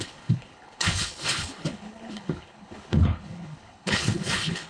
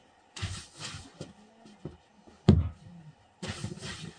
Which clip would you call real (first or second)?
second